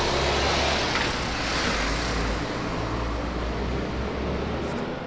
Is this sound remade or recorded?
recorded